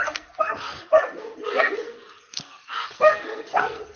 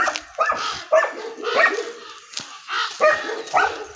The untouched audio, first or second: second